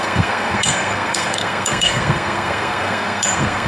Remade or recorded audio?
remade